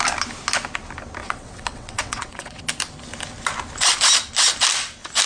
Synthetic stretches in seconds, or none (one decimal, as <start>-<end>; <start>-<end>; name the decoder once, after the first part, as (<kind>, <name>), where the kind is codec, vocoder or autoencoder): 1.2-2.6 (vocoder, WaveNeXt)